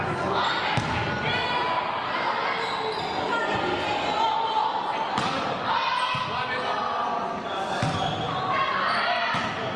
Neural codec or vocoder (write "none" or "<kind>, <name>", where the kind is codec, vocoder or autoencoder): none